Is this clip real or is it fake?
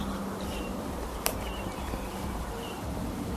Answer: fake